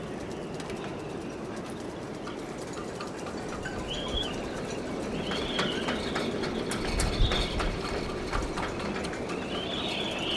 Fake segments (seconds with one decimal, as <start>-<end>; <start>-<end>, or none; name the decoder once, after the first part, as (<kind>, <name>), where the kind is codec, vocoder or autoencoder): none